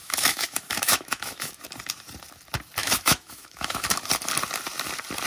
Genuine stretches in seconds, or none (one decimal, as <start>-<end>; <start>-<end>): 1.6-2.8; 4.0-5.3